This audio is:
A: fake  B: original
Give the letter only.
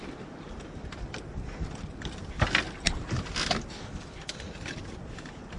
B